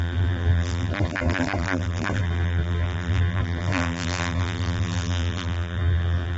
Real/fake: fake